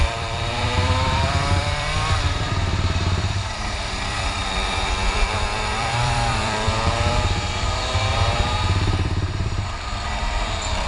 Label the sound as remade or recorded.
remade